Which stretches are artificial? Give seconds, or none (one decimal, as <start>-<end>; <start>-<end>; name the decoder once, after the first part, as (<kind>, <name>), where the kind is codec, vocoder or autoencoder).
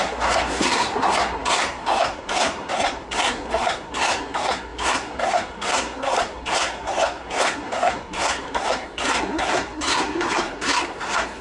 0.0-11.4 (codec, SNAC)